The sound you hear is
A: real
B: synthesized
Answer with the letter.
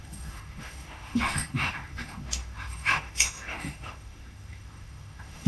B